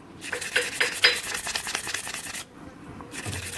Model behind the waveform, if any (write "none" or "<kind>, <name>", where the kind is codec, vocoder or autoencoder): none